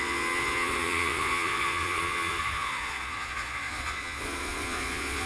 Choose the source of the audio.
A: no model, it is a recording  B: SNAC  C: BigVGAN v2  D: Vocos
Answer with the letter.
D